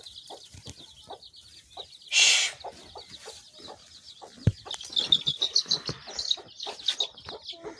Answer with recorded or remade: recorded